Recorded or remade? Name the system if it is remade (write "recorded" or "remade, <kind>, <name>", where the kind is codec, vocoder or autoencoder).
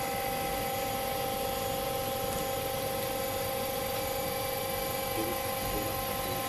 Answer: recorded